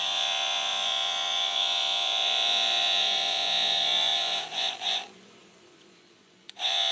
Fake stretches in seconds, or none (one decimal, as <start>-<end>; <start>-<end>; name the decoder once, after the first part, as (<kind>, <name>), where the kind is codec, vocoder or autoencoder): 0.0-6.9 (vocoder, Vocos)